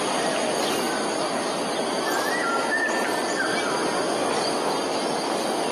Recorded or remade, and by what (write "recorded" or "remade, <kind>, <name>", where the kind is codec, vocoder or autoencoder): recorded